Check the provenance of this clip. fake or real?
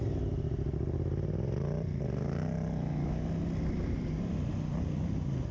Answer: real